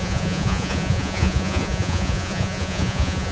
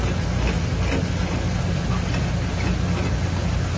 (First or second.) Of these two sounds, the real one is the second